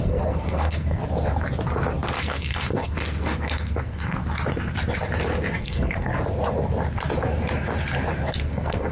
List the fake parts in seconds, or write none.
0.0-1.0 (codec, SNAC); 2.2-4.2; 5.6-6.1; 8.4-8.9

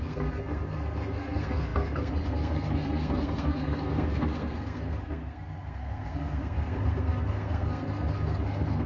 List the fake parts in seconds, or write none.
0.0-8.9 (codec, SNAC)

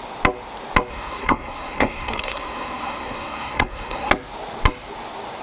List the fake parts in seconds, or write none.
0.9-4.1 (codec, SNAC)

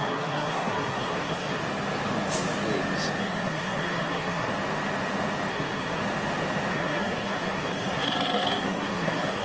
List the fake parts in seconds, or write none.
0.0-1.6 (codec, SNAC); 3.2-4.5; 5.5-6.0; 6.7-9.4